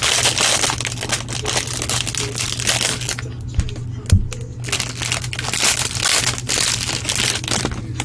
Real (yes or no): yes